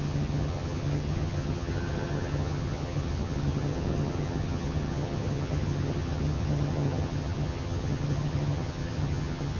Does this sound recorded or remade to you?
remade